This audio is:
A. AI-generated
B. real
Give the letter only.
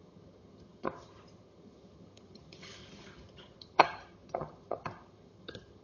A